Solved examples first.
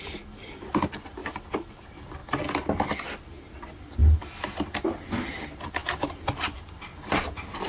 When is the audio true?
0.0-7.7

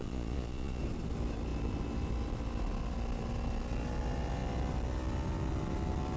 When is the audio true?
0.8-6.2